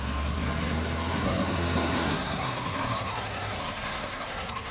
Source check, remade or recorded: remade